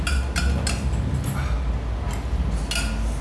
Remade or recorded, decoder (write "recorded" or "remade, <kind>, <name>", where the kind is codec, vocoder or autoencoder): recorded